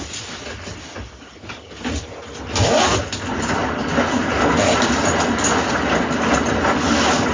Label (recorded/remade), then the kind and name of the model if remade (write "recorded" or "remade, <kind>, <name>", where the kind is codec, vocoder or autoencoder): recorded